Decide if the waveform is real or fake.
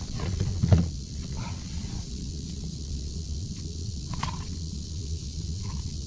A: fake